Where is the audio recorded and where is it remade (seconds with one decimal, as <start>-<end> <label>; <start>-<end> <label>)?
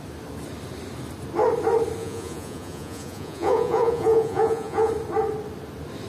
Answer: 0.0-2.0 recorded; 2.0-4.9 remade; 4.9-6.1 recorded